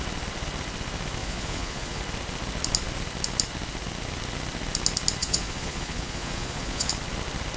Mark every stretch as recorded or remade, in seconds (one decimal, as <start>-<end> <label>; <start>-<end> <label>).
0.0-1.2 recorded; 1.2-2.0 remade; 2.0-5.2 recorded; 5.2-6.9 remade; 6.9-7.6 recorded